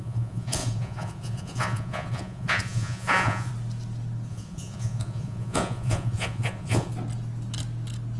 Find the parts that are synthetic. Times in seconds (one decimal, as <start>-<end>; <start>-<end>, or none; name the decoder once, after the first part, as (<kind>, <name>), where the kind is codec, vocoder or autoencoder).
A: 0.0-3.5 (vocoder, Vocos); 4.3-6.9